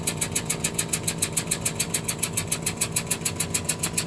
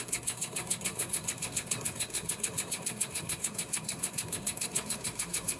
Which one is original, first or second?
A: first